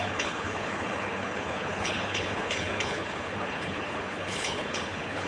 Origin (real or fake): fake